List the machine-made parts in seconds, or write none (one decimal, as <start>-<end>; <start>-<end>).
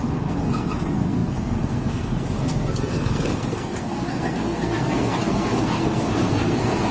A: 0.0-6.9